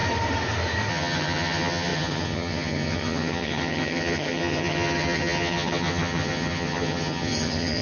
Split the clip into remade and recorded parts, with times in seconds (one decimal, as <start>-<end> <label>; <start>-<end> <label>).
0.0-0.9 recorded; 0.9-7.8 remade